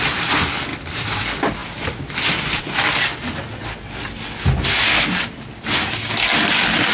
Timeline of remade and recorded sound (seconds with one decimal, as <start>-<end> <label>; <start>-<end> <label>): 0.0-0.7 recorded; 0.7-1.2 remade; 1.2-6.9 recorded